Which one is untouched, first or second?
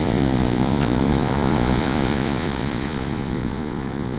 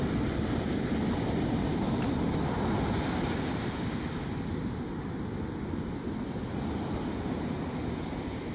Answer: second